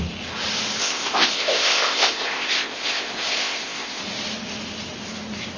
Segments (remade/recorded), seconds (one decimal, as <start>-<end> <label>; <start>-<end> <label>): 0.0-0.8 recorded; 0.8-4.0 remade; 4.0-5.6 recorded